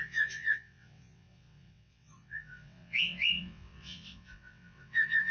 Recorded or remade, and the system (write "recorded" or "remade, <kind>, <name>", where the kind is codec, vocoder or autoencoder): remade, vocoder, WaveNeXt